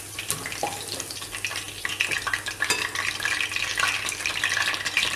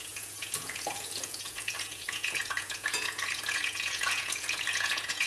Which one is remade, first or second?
second